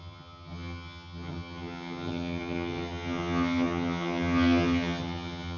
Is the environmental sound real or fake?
fake